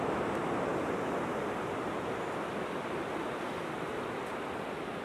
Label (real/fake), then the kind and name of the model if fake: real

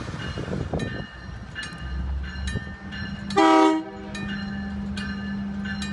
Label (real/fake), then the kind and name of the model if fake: real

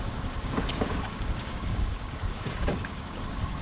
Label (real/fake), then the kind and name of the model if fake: fake, codec, DAC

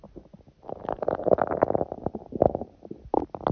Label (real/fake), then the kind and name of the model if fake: real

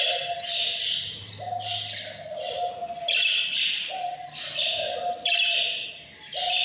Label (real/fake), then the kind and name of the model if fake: real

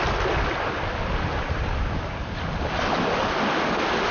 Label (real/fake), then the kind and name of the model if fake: real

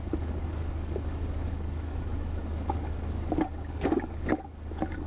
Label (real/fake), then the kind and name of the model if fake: fake, codec, DAC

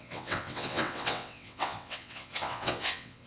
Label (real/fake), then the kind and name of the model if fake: fake, vocoder, WaveNeXt